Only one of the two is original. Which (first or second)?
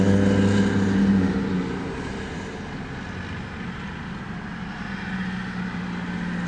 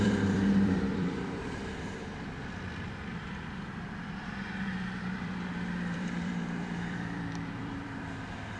first